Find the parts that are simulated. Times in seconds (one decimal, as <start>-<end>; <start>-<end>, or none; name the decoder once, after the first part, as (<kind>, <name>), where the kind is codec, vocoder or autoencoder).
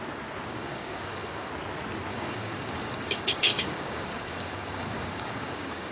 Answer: 0.5-1.5 (codec, DAC); 2.1-5.9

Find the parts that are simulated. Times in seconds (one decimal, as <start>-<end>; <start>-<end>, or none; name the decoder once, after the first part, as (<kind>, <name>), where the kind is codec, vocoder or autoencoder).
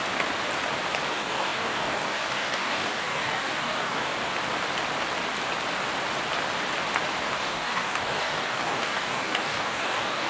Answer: 1.1-4.1 (codec, DAC); 7.4-10.3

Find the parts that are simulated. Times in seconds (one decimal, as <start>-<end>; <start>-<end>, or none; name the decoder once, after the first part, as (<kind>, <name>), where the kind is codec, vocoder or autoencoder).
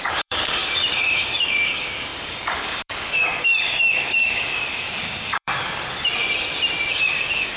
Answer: 0.0-5.5 (codec, DAC); 6.9-7.6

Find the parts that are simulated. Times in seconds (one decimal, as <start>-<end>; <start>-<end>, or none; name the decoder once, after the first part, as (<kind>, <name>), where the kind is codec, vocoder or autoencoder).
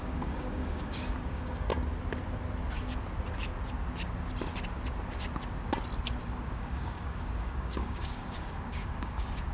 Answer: 0.0-1.7 (codec, DAC); 6.5-9.5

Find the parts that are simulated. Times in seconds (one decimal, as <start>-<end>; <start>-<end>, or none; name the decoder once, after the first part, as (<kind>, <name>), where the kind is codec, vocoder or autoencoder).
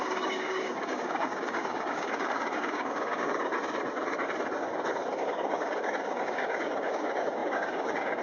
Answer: 0.0-3.5 (codec, DAC); 5.2-8.2